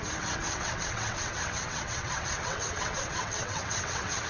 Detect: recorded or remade remade